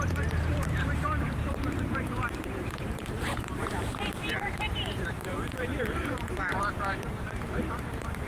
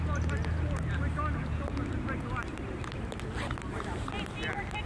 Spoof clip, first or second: first